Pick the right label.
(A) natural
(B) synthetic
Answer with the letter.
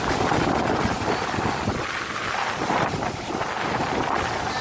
A